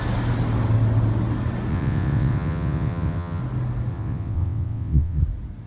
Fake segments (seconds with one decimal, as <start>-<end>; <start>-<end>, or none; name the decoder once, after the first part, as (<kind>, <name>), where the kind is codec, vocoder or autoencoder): 1.7-3.4 (vocoder, WaveNeXt); 3.9-5.2